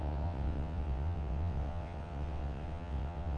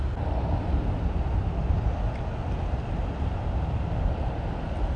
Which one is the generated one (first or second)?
first